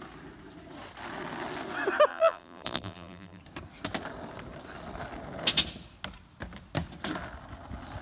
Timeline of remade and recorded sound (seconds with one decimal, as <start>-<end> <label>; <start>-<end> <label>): 0.0-2.1 recorded; 2.1-3.4 remade; 3.4-8.0 recorded